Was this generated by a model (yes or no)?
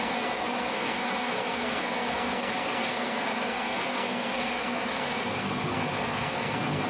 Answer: yes